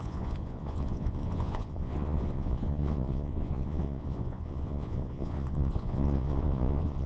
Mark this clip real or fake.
fake